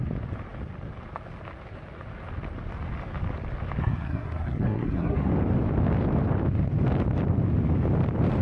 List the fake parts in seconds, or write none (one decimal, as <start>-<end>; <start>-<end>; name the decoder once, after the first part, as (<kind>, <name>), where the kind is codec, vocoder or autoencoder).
3.8-5.3 (codec, SNAC)